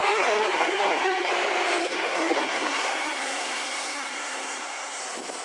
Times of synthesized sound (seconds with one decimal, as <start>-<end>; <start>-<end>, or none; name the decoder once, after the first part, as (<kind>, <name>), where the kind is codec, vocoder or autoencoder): 0.0-1.3 (codec, SNAC); 1.8-5.0